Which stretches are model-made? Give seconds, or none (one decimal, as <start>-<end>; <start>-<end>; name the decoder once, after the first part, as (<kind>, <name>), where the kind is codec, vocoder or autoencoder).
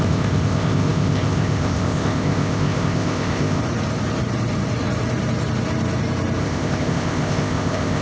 0.0-3.6 (codec, ZipCodec); 6.4-8.0